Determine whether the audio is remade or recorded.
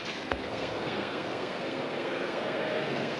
remade